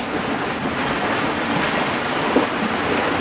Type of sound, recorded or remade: recorded